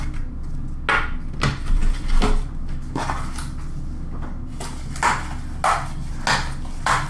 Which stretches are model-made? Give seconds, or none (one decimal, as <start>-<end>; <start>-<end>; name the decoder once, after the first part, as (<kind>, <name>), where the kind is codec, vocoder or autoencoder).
none